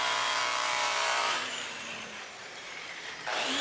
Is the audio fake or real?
fake